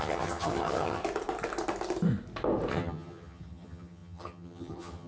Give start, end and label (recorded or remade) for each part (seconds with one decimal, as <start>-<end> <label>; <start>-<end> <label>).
0.0-1.0 remade; 1.0-2.7 recorded; 2.7-5.1 remade